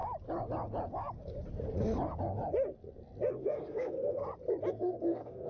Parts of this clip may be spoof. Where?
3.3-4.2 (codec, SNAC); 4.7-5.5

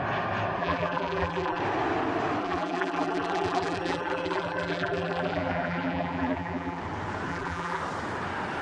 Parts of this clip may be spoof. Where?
0.6-1.6 (vocoder, BigVGAN v2); 2.4-6.8; 7.3-7.8